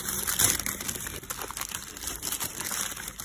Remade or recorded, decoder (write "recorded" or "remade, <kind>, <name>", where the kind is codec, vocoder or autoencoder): remade, vocoder, BigVGAN v2